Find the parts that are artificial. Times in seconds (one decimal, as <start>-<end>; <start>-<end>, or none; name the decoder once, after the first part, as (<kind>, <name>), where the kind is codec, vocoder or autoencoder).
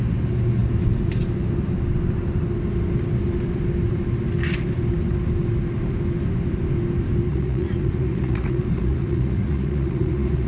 7.3-10.5 (vocoder, Vocos)